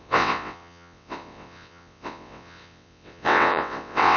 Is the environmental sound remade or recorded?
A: remade